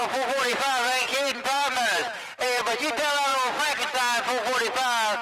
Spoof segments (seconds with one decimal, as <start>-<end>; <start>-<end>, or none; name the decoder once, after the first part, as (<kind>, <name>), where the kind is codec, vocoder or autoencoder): 0.0-2.8 (vocoder, BigVGAN v2); 3.3-3.9